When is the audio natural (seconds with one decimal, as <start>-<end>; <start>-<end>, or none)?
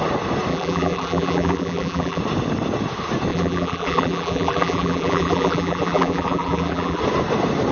0.0-0.5; 2.2-3.3; 7.0-7.7